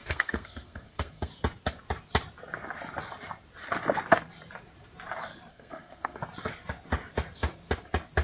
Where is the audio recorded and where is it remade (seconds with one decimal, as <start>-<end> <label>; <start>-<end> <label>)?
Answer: 0.0-1.3 remade; 1.3-5.5 recorded; 5.5-6.2 remade; 6.2-8.2 recorded